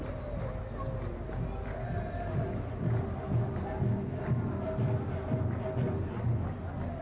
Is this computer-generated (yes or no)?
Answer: no